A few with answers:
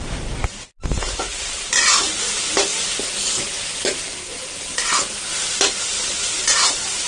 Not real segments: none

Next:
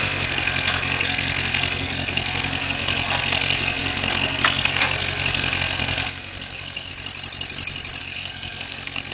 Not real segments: 0.0-6.9; 8.0-9.1

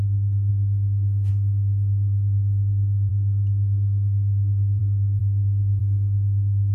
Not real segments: 0.5-1.3; 3.1-4.8

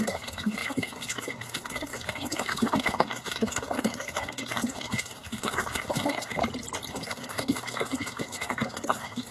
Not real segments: 0.0-6.4; 6.9-9.3